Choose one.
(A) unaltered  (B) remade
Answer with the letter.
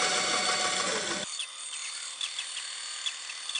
A